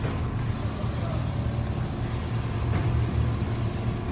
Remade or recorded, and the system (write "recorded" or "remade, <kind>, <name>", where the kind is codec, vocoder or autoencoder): recorded